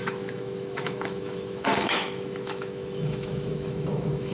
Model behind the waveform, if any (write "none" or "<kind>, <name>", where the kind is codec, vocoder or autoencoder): autoencoder, DAC-VAE